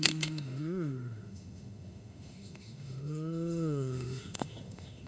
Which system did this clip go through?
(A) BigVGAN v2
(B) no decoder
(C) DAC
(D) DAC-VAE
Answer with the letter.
D